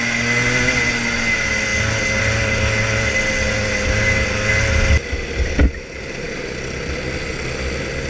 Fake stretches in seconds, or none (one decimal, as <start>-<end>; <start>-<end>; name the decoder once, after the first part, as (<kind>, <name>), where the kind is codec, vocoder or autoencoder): none